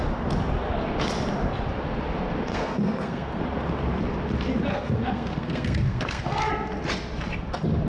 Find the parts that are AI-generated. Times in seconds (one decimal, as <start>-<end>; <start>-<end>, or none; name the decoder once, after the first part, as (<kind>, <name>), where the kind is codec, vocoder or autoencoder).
2.5-3.4 (codec, SNAC); 4.7-6.5